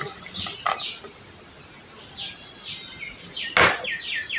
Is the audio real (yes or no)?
yes